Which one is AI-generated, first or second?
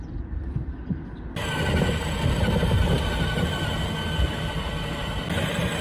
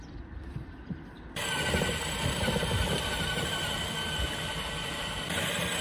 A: second